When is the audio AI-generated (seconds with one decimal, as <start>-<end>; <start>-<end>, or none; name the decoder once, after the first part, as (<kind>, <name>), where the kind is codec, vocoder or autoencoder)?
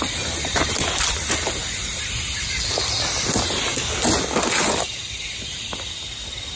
none